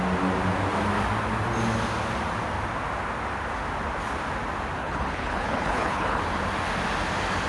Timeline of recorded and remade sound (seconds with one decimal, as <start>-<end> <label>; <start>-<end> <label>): 0.0-4.8 recorded; 4.8-6.2 remade; 6.2-7.5 recorded